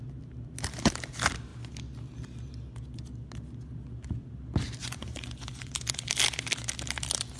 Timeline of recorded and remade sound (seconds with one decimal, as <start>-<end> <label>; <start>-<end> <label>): 0.0-4.8 recorded; 4.8-5.7 remade; 5.7-7.4 recorded